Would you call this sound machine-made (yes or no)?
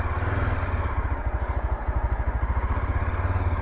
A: no